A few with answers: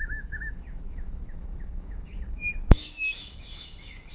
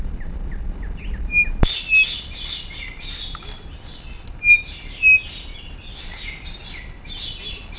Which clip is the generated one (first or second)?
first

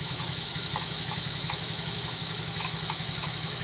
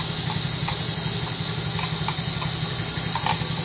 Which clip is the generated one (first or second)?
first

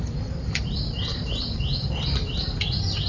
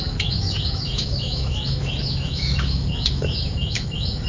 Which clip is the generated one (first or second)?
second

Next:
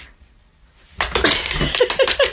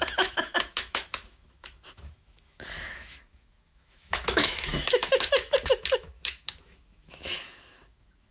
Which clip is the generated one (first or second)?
second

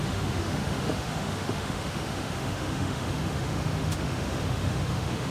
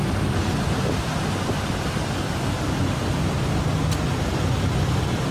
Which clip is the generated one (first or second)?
first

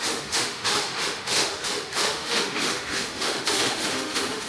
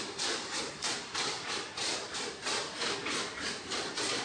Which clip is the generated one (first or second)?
first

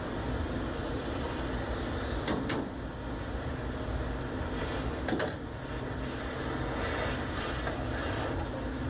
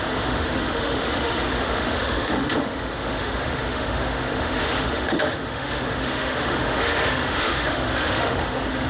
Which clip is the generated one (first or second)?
second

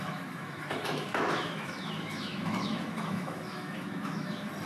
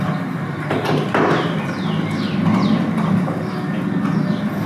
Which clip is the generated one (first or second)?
first